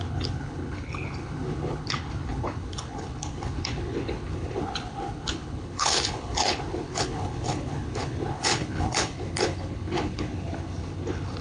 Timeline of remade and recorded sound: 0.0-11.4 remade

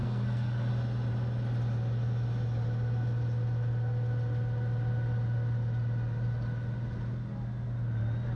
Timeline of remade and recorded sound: 0.0-0.7 remade; 0.7-8.4 recorded

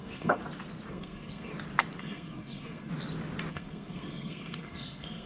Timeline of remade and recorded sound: 0.0-0.4 remade; 0.4-0.9 recorded; 0.9-1.5 remade; 1.5-2.0 recorded; 2.0-2.9 remade; 2.9-3.5 recorded; 3.5-5.3 remade

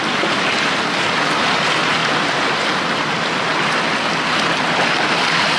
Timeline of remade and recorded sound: 0.0-2.0 recorded; 2.0-3.7 remade; 3.7-5.6 recorded

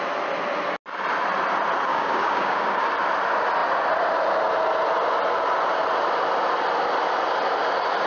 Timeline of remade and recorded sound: 0.0-1.9 recorded; 1.9-2.9 remade; 2.9-8.1 recorded

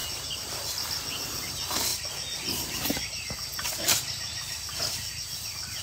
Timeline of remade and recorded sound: 0.0-1.5 recorded; 1.5-5.8 remade

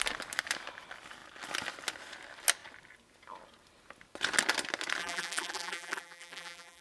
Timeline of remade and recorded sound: 0.0-5.0 recorded; 5.0-6.8 remade